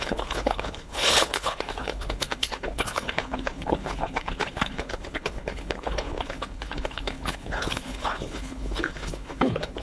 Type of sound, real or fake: fake